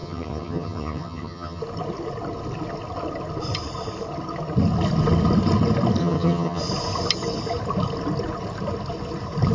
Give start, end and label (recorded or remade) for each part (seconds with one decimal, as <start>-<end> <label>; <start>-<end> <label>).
0.0-1.6 remade; 1.6-6.0 recorded; 6.0-6.6 remade; 6.6-9.5 recorded